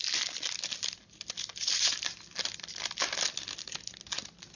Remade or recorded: recorded